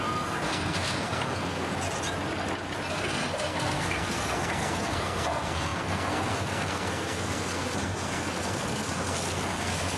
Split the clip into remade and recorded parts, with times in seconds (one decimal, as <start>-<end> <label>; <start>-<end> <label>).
0.0-1.7 remade; 1.7-2.9 recorded; 2.9-10.0 remade

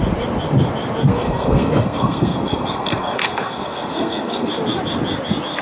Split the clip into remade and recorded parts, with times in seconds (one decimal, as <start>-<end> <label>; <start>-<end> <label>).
0.0-1.1 recorded; 1.1-4.5 remade; 4.5-5.6 recorded

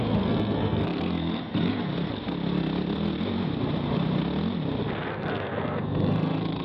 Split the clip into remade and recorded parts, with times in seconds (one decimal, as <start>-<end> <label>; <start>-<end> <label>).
0.0-1.9 remade; 1.9-5.1 recorded; 5.1-6.6 remade

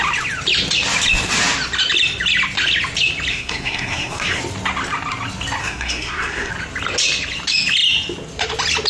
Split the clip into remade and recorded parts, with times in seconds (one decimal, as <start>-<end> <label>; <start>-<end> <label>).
0.0-3.3 recorded; 3.3-4.4 remade; 4.4-5.6 recorded; 5.6-6.5 remade; 6.5-8.9 recorded

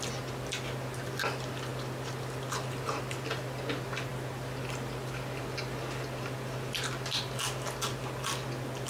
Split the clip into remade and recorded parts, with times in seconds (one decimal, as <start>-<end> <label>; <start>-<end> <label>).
0.0-8.9 recorded

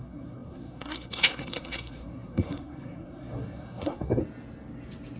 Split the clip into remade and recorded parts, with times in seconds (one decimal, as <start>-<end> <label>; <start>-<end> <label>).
0.0-4.2 remade; 4.2-5.2 recorded

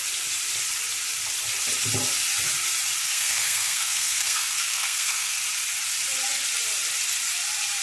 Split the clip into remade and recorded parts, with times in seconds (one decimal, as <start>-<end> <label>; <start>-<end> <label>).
0.0-3.0 recorded; 3.0-5.4 remade; 5.4-7.8 recorded